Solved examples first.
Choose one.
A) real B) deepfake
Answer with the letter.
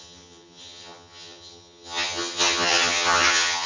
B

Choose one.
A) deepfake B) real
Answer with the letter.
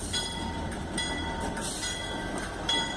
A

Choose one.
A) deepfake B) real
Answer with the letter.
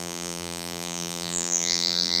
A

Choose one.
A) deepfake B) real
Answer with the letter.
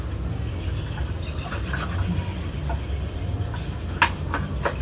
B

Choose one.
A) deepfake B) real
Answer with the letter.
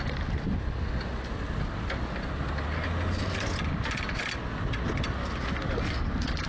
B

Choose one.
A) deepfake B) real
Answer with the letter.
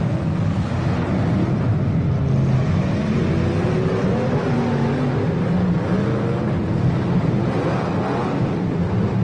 B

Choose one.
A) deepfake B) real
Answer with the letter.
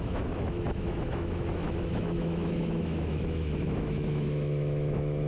A